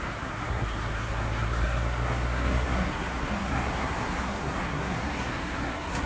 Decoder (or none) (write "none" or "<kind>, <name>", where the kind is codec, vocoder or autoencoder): codec, SNAC